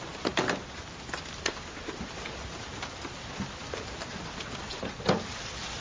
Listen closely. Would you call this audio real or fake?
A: real